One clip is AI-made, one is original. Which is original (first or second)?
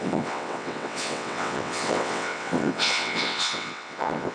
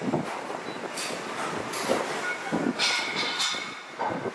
second